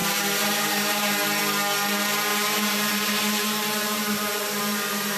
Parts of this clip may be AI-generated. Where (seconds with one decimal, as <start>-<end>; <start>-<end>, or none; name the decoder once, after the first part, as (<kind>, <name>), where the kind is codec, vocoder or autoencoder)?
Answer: 0.0-1.4 (vocoder, BigVGAN v2); 2.3-4.6